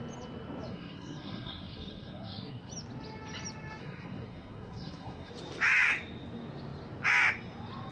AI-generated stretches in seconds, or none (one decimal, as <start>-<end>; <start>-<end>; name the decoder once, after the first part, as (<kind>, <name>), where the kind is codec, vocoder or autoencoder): 0.7-2.7 (codec, SNAC); 3.8-5.3